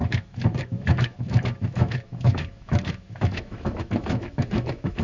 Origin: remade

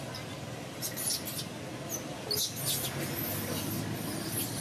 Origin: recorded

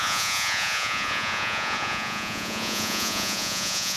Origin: remade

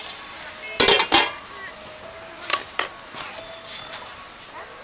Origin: recorded